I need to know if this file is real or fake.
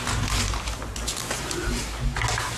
real